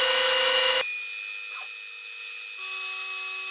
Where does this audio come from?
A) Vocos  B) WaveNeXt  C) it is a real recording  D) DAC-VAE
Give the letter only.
C